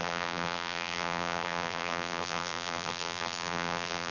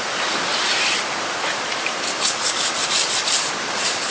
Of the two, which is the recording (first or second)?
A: second